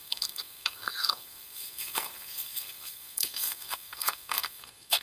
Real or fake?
fake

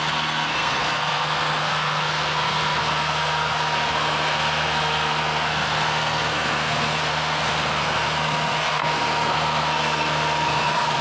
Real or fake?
fake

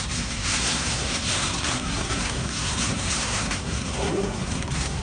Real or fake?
fake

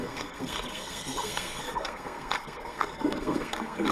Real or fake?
fake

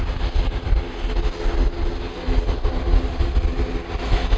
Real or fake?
real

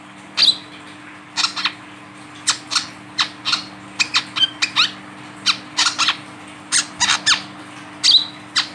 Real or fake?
real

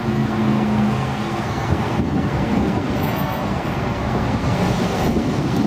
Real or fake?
fake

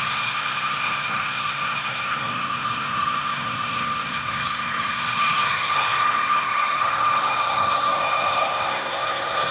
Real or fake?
fake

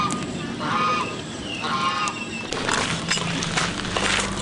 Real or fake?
real